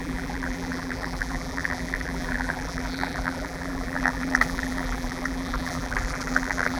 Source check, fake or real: fake